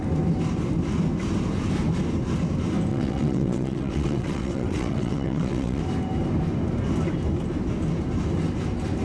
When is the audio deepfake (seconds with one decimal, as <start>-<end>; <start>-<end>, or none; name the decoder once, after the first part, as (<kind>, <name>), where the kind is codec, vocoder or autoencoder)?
2.9-5.8 (vocoder, WaveNeXt)

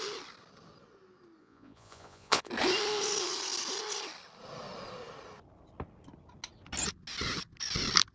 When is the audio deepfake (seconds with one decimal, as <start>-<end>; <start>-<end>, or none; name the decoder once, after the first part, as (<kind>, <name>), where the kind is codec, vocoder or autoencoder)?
1.4-2.5 (vocoder, Vocos)

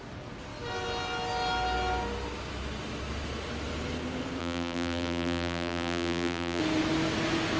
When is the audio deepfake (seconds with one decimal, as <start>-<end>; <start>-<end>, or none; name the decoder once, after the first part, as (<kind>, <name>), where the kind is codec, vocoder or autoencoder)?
4.4-6.6 (vocoder, BigVGAN v2)

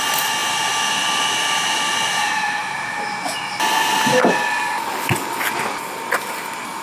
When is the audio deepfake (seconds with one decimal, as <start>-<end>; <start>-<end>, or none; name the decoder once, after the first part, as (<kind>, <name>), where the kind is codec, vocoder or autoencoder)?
none

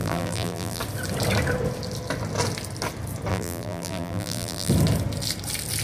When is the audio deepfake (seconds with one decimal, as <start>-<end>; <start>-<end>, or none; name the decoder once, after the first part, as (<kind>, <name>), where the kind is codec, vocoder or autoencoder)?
0.0-0.8 (vocoder, BigVGAN v2); 3.3-4.7

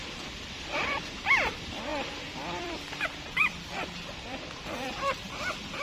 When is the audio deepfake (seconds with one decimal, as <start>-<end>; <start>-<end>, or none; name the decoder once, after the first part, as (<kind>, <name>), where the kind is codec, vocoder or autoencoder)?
0.0-1.2 (vocoder, BigVGAN v2); 1.9-5.8